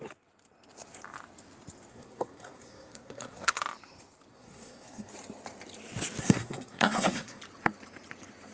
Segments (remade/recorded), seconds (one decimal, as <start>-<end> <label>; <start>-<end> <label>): 0.0-1.9 recorded; 1.9-3.6 remade; 3.6-4.3 recorded; 4.3-5.1 remade; 5.1-6.2 recorded; 6.2-7.4 remade; 7.4-8.5 recorded